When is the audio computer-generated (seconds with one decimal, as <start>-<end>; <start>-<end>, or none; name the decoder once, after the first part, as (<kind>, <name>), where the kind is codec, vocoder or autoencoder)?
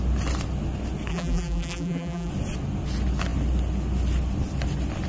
1.1-2.3 (vocoder, BigVGAN v2)